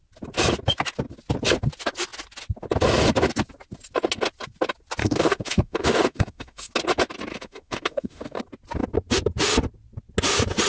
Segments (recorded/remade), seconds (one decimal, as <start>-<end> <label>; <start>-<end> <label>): 0.0-5.0 recorded; 5.0-6.7 remade; 6.7-7.3 recorded; 7.3-8.4 remade; 8.4-10.7 recorded